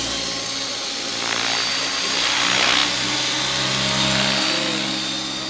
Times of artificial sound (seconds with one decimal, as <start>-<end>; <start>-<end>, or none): none